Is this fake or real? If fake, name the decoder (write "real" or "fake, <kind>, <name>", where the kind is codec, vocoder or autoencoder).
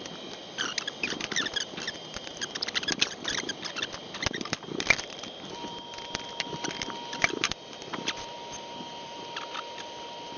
fake, vocoder, BigVGAN v2